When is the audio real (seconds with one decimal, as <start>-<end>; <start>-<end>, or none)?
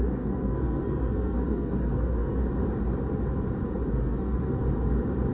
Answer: 2.4-3.9; 4.6-5.3